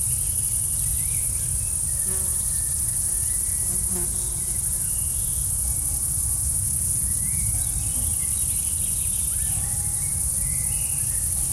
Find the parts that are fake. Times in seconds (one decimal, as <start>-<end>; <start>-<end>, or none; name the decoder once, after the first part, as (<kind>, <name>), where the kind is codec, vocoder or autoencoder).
2.3-7.5 (vocoder, Vocos)